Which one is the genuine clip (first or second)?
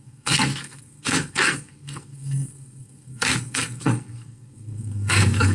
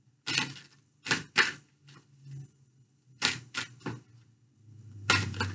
second